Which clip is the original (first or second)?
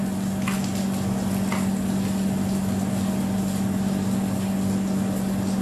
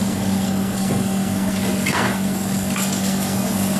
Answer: first